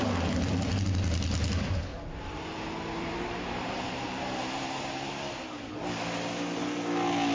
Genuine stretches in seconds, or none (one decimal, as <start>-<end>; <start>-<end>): 0.0-1.9; 5.7-7.3